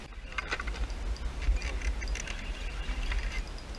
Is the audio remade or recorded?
recorded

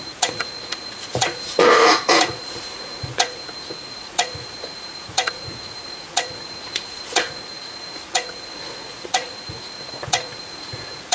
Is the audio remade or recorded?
remade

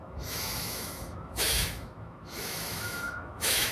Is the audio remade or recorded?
remade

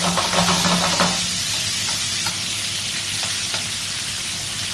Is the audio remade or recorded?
recorded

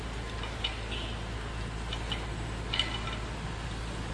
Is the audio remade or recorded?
recorded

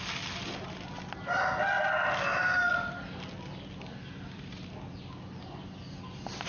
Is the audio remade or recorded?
recorded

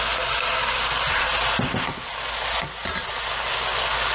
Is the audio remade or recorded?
recorded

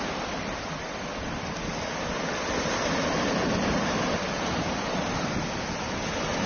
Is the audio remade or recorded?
recorded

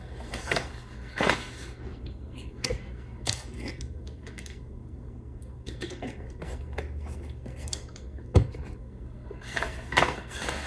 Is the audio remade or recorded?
remade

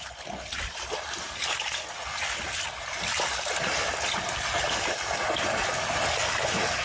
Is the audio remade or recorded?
recorded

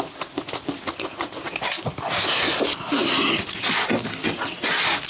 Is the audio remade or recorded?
recorded